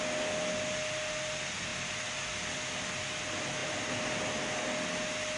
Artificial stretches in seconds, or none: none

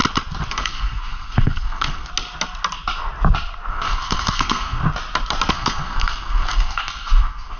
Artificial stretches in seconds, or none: 0.5-2.1 (codec, SNAC); 3.7-4.8; 5.5-7.6

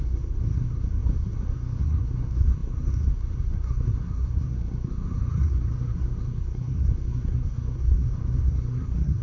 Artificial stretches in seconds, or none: 0.0-9.2 (codec, SNAC)

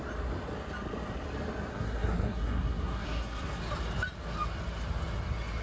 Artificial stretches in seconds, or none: 1.7-3.6 (codec, SNAC)

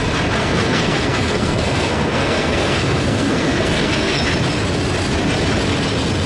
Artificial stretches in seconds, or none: 0.4-4.2 (codec, SNAC)

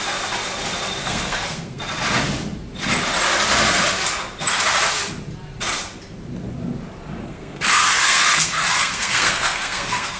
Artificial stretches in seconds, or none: 1.0-1.8 (codec, SNAC); 7.2-10.2

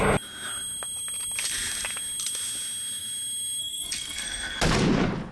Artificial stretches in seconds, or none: 3.6-4.6 (codec, SNAC)